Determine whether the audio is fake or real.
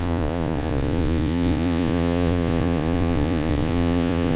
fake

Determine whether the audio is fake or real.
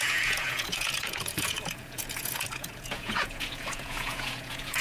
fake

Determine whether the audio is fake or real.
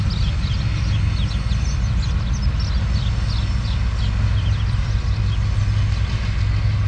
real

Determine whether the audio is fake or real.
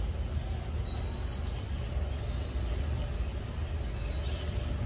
real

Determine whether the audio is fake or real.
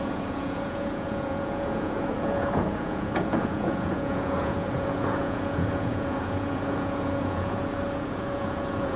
fake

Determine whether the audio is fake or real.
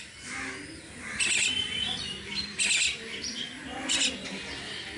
real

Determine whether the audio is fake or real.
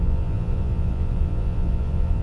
fake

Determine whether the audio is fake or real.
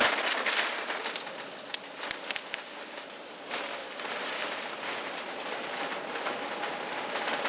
real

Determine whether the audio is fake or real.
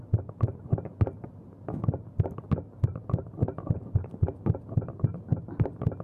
real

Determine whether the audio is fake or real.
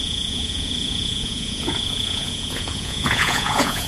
fake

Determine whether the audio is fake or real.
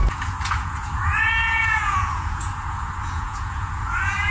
fake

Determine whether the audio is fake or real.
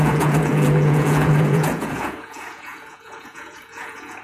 fake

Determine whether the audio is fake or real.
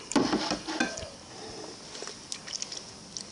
real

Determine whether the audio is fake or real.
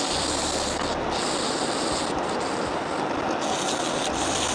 real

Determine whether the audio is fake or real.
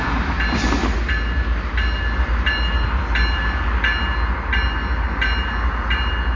real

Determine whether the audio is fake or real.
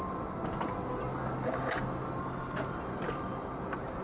real